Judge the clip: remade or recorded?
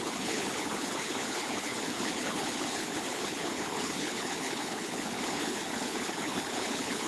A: remade